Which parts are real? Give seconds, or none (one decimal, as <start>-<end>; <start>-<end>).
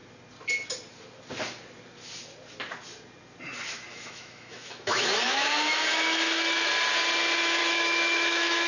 0.0-3.9; 6.7-7.6